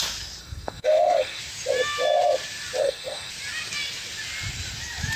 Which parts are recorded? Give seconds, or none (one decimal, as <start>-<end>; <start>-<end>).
0.0-0.4; 1.4-2.8; 3.3-5.2